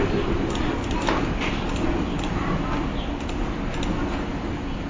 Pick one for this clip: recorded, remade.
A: recorded